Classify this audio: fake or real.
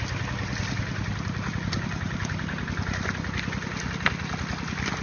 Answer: real